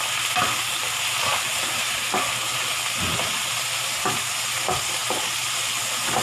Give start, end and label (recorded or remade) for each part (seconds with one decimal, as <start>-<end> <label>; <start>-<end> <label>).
0.0-1.3 recorded; 1.3-2.0 remade; 2.0-6.2 recorded